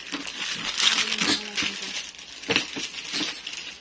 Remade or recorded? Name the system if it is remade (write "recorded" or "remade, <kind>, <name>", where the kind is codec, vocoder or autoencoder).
recorded